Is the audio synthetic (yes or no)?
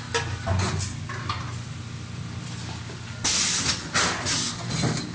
no